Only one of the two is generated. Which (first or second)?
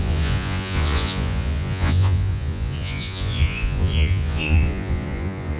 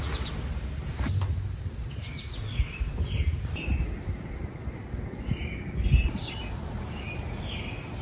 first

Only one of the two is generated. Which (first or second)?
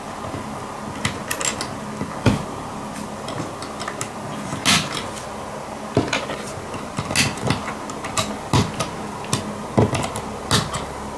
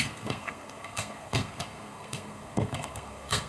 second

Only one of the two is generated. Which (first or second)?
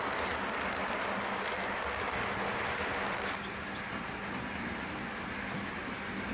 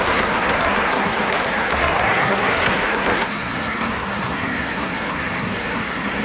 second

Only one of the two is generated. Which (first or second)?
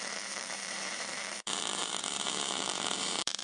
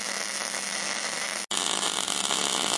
first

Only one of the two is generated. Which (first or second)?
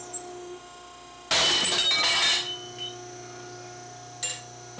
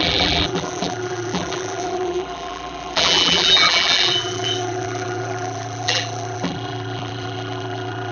second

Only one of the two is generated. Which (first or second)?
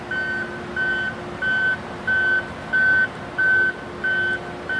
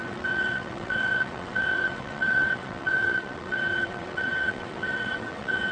second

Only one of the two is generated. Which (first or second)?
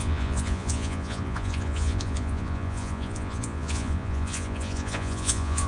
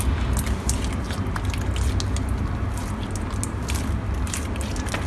first